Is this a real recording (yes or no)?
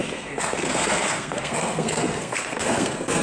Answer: no